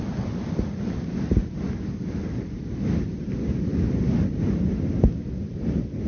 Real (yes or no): yes